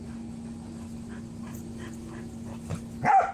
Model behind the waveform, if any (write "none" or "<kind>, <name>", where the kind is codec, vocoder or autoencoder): none